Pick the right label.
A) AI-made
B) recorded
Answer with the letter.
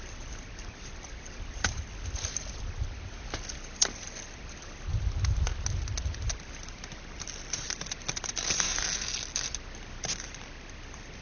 B